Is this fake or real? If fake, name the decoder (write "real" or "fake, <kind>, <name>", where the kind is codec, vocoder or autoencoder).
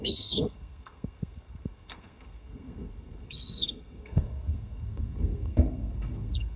fake, codec, SNAC